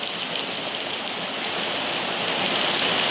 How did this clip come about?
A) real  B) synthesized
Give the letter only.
A